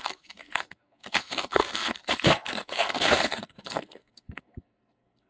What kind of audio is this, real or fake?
fake